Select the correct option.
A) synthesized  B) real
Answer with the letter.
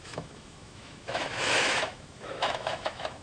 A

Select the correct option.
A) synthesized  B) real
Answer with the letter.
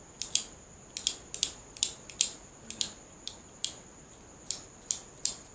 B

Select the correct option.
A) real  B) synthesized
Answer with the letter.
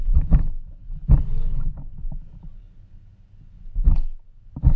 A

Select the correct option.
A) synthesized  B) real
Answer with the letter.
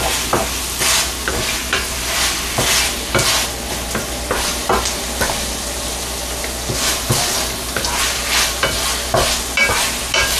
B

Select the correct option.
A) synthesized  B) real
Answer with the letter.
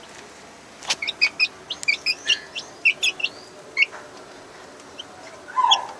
B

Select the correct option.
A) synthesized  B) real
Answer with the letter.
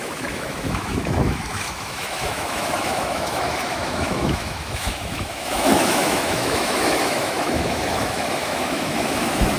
A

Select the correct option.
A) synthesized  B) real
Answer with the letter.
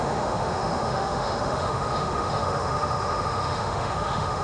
A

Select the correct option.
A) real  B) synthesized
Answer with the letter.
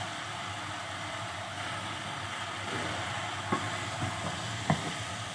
A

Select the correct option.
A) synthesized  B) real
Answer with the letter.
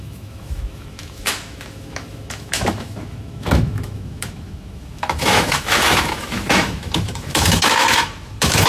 A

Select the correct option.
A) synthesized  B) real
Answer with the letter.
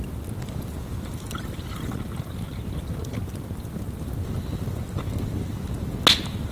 B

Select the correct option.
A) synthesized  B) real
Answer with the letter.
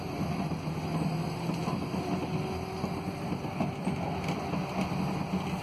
B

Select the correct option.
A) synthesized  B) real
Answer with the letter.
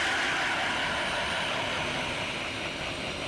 B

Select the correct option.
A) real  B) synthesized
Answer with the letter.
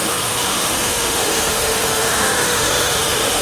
B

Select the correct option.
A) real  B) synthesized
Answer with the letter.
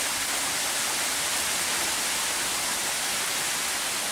A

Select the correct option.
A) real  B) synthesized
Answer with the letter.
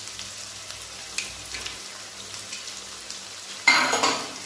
A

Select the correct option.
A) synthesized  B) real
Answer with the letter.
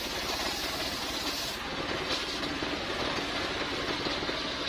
B